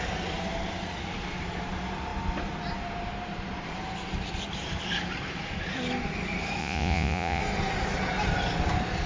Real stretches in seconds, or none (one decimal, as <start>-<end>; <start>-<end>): 0.0-6.6; 7.4-9.1